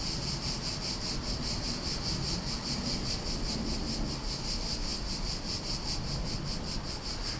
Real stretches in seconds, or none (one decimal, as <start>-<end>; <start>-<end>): 0.0-4.9; 7.0-7.4